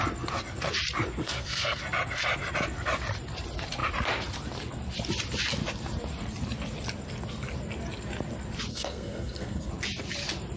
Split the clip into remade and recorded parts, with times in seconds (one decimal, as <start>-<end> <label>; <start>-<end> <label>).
0.0-1.2 recorded; 1.2-1.8 remade; 1.8-8.7 recorded; 8.7-9.7 remade; 9.7-10.6 recorded